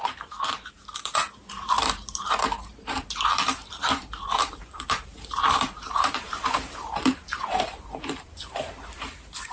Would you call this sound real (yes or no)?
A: no